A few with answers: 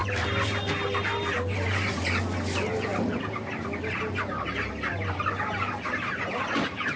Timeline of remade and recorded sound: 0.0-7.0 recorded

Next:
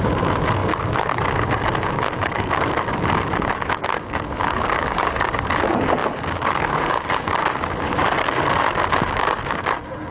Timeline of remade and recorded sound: 0.0-10.1 remade